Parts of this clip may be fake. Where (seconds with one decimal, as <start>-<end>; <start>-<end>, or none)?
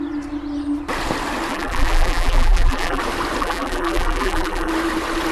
1.5-3.0; 3.4-4.7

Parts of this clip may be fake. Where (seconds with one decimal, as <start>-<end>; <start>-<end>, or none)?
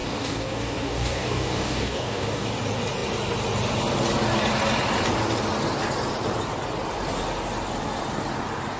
0.0-2.5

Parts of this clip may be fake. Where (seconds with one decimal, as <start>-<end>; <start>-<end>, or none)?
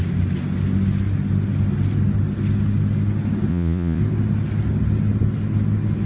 3.5-4.0